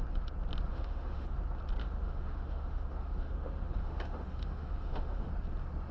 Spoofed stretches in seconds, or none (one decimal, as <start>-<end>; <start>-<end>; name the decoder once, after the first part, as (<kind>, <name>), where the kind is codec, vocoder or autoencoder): 0.7-1.4 (autoencoder, DAC-VAE); 1.8-5.3